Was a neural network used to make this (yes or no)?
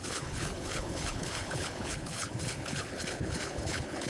yes